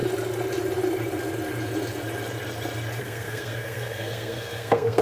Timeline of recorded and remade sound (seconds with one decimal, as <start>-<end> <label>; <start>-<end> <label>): 0.0-3.0 recorded; 3.0-5.0 remade